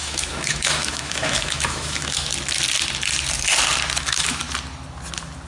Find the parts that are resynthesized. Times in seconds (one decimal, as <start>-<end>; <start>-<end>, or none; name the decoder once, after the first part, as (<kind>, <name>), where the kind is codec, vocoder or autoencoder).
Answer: 0.0-2.3 (autoencoder, DAC-VAE); 4.0-4.4